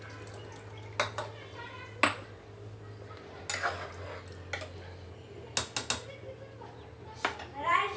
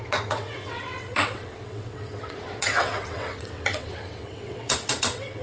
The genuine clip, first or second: first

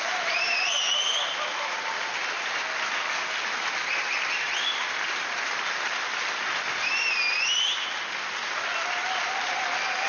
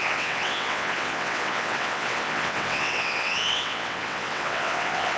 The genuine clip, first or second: first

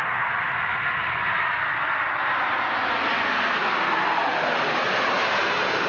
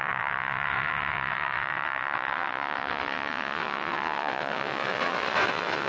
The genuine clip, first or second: first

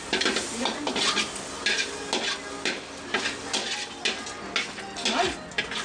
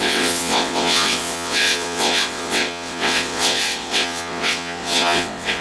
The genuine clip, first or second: first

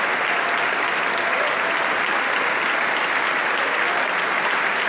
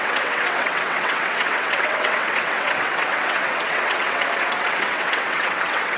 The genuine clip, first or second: first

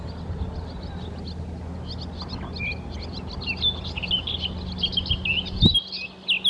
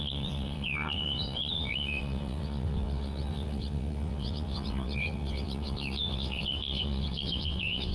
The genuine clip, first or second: first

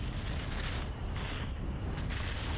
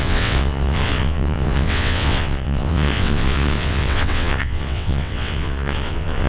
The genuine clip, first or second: first